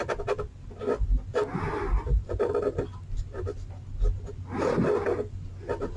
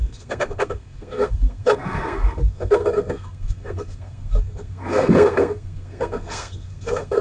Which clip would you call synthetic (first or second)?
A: second